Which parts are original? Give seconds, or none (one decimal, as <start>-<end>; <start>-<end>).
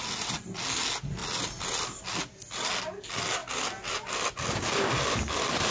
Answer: 0.0-5.7